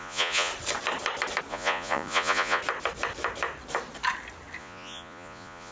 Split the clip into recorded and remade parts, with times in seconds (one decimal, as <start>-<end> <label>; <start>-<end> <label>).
0.0-0.5 remade; 0.5-1.5 recorded; 1.5-2.6 remade; 2.6-4.6 recorded; 4.6-5.7 remade